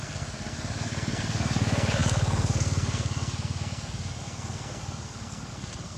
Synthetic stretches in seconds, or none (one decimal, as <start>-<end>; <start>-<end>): 0.0-6.0

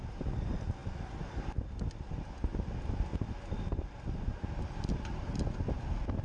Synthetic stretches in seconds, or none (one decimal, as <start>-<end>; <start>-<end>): none

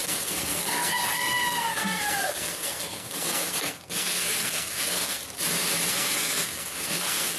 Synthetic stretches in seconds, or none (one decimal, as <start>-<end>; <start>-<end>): 0.0-5.2; 5.9-7.4

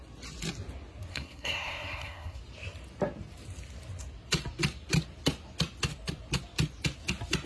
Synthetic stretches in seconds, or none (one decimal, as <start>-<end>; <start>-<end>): 1.1-2.4

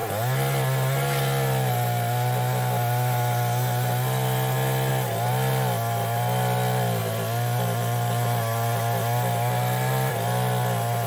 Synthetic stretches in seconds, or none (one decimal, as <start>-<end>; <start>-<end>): none